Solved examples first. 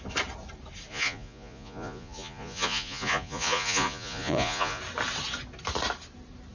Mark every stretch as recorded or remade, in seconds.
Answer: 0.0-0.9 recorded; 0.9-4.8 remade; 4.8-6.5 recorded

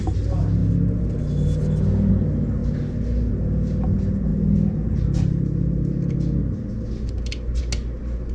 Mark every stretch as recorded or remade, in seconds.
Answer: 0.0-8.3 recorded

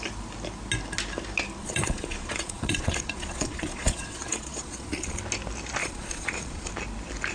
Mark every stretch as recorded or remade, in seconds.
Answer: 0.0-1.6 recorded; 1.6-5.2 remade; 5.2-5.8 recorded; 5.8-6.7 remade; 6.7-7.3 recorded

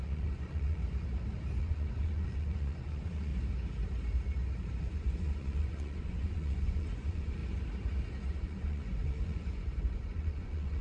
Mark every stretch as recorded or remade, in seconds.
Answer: 0.0-0.8 remade; 0.8-1.6 recorded; 1.6-3.3 remade; 3.3-4.8 recorded; 4.8-7.4 remade; 7.4-8.3 recorded; 8.3-10.8 remade

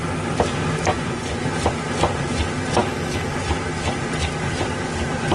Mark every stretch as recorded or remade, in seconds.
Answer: 0.0-0.9 recorded; 0.9-1.4 remade; 1.4-5.3 recorded

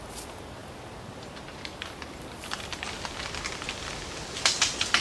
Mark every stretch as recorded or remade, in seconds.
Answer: 0.0-5.0 recorded

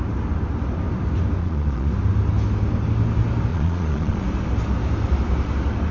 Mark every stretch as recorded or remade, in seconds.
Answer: 0.0-1.4 recorded; 1.4-1.9 remade; 1.9-3.5 recorded; 3.5-4.2 remade; 4.2-5.9 recorded